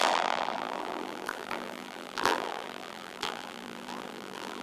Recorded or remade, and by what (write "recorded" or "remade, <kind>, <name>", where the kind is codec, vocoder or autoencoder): remade, vocoder, BigVGAN v2